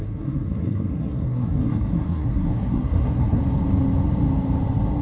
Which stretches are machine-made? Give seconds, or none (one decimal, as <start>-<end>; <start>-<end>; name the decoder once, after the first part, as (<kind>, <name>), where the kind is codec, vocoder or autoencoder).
0.0-3.4 (codec, SNAC)